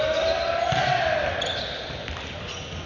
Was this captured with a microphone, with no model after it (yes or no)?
yes